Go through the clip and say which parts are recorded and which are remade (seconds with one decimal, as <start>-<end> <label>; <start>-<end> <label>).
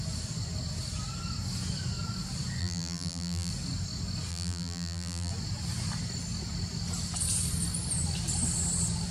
0.0-2.6 recorded; 2.6-3.5 remade; 3.5-4.3 recorded; 4.3-5.3 remade; 5.3-9.1 recorded